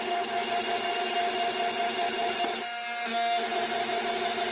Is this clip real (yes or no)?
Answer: yes